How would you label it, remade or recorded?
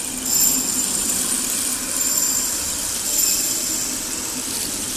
recorded